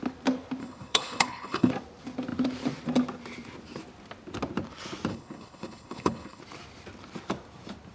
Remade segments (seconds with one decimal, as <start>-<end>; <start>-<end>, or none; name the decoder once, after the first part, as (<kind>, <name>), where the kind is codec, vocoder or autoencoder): 0.6-1.7 (codec, HILCodec); 5.1-6.4